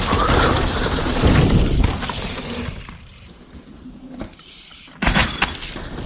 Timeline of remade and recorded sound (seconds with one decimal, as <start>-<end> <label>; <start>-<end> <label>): 0.0-5.2 remade; 5.2-6.1 recorded

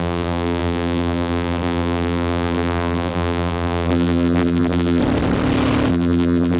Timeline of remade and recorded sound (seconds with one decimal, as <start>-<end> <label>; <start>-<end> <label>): 0.0-5.0 remade; 5.0-5.9 recorded; 5.9-6.6 remade

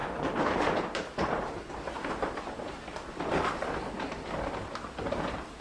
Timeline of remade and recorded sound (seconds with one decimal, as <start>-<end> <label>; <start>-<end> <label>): 0.0-5.6 recorded